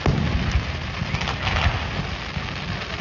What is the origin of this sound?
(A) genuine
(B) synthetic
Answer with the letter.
A